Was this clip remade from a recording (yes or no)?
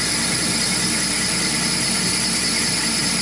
no